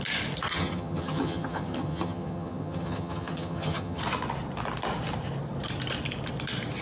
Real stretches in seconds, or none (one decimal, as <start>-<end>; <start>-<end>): 0.0-0.5; 4.0-6.8